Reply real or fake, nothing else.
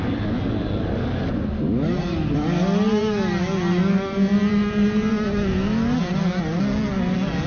real